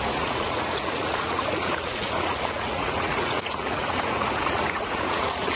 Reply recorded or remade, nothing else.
remade